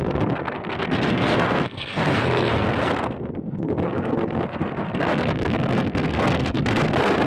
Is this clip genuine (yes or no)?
no